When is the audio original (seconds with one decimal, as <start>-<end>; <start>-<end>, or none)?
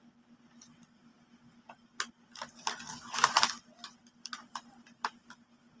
0.0-1.1; 4.6-5.8